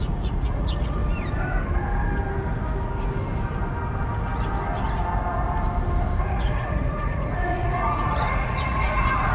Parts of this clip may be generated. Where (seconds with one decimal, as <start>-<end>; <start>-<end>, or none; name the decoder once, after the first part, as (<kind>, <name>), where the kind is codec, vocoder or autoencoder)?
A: 0.0-1.0 (vocoder, Vocos); 6.2-9.3